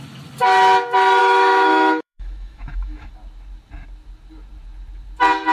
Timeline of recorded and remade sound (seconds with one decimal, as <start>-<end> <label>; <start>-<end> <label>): 0.0-1.2 recorded; 1.2-3.1 remade; 3.1-5.5 recorded